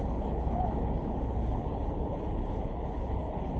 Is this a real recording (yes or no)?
no